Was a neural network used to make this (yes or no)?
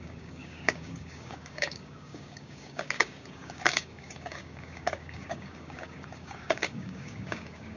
yes